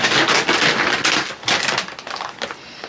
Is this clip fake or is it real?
real